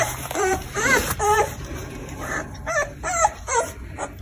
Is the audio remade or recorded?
remade